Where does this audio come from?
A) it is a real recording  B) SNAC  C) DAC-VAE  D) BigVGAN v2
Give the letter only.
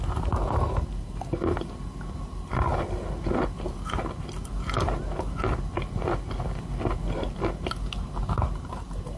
A